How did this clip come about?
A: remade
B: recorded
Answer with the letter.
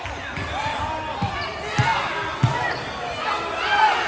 B